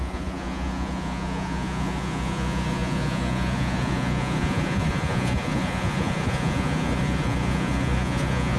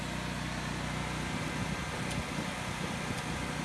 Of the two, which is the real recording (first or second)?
second